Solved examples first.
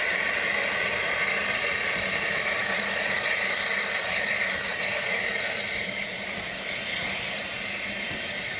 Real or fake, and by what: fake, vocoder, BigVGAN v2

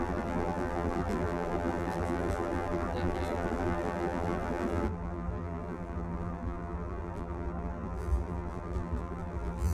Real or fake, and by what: fake, vocoder, BigVGAN v2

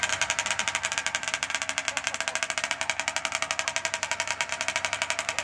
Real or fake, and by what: real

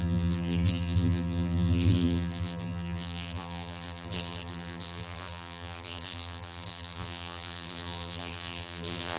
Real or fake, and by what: fake, vocoder, BigVGAN v2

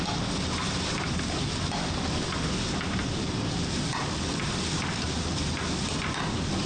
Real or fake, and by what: real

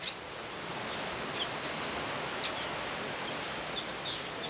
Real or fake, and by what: real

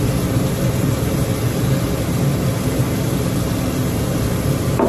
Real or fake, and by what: real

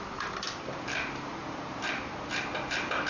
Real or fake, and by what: fake, vocoder, BigVGAN v2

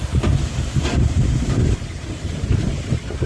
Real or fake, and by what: fake, vocoder, BigVGAN v2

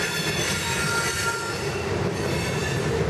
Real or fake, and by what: real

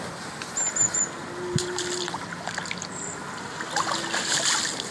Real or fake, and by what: fake, vocoder, BigVGAN v2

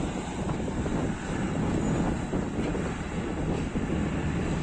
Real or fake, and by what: real